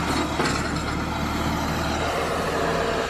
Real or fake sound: real